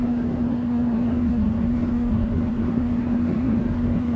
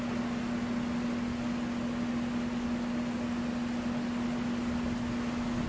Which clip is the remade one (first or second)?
first